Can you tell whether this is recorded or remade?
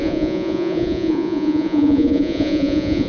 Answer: remade